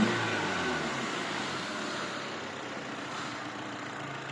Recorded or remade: recorded